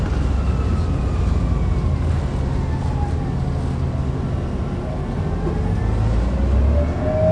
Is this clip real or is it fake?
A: real